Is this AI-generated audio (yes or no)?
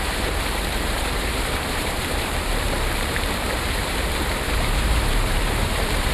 yes